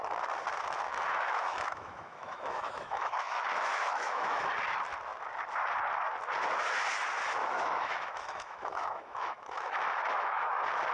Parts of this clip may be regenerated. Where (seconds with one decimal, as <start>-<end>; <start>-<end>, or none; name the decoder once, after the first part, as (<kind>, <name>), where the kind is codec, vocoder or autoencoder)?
0.9-4.5 (autoencoder, DAC-VAE); 7.4-10.5